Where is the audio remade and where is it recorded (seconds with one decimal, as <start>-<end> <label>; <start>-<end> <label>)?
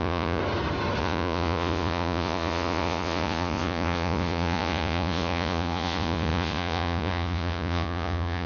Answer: 0.0-0.4 remade; 0.4-1.0 recorded; 1.0-8.5 remade